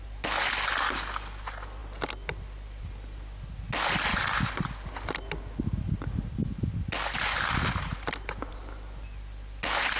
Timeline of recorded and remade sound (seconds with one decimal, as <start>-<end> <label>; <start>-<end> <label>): 0.0-10.0 recorded